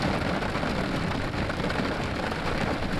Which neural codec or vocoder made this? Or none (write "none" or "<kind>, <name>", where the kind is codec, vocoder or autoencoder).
none